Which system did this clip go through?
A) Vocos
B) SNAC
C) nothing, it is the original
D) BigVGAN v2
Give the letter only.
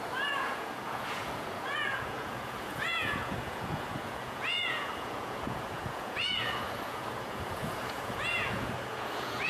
A